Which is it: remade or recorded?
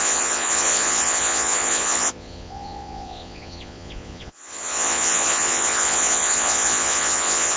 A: remade